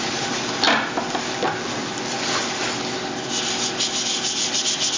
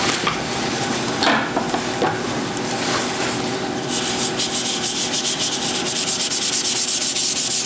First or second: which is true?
first